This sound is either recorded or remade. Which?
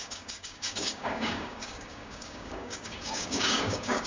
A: remade